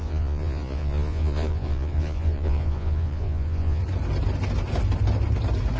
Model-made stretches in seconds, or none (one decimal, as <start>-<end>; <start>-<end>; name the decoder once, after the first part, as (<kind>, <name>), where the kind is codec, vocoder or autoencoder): 0.0-3.8 (vocoder, Vocos)